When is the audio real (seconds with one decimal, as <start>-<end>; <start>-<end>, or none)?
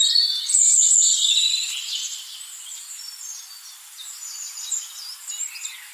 4.0-5.9